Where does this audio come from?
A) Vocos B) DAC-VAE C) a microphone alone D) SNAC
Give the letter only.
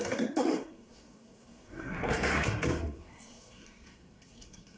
D